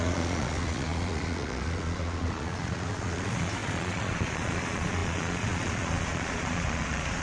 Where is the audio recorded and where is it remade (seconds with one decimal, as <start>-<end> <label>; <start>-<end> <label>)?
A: 0.0-7.2 remade